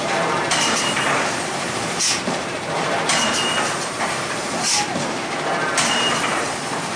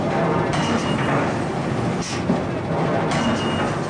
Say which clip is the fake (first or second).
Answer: first